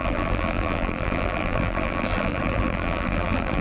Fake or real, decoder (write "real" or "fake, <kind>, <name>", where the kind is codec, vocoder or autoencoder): fake, vocoder, BigVGAN v2